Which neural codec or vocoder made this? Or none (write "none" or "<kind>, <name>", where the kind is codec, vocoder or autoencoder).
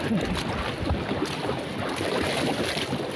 none